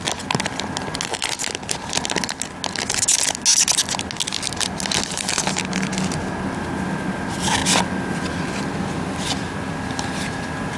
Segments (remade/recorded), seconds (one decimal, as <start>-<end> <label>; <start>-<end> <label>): 0.0-10.8 recorded